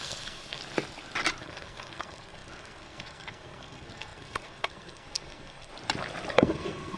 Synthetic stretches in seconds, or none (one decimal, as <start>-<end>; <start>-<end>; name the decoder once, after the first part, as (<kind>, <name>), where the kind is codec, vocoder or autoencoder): 0.0-0.6 (codec, SNAC); 1.4-5.7; 6.3-7.0